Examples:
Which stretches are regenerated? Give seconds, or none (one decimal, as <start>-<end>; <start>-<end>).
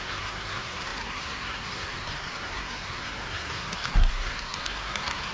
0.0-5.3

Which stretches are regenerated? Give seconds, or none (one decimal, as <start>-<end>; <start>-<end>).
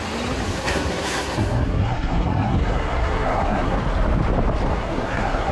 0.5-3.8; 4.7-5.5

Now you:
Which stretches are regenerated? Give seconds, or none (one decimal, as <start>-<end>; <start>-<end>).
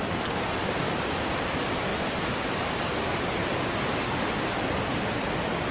none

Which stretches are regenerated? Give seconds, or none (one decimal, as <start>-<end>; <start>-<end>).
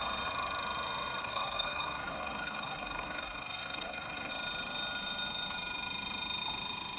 1.2-4.3